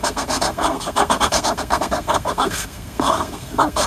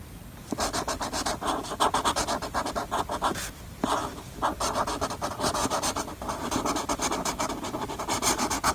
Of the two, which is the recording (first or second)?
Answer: second